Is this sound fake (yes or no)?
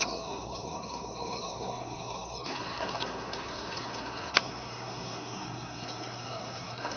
yes